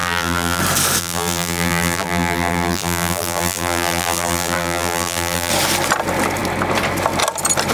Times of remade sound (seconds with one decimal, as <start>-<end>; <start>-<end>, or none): 0.0-0.6; 1.0-5.5